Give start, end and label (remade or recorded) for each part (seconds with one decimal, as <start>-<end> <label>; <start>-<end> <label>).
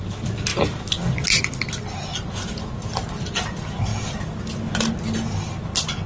0.0-6.1 recorded